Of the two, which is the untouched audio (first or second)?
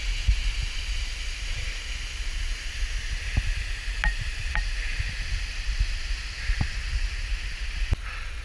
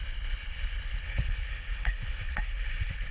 first